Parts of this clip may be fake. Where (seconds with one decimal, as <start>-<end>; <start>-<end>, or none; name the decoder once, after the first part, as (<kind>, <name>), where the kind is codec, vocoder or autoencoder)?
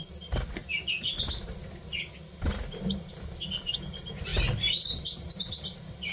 none